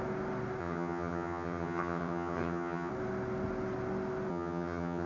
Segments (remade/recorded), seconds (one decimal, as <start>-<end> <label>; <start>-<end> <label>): 0.0-0.6 recorded; 0.6-2.9 remade; 2.9-4.3 recorded; 4.3-5.1 remade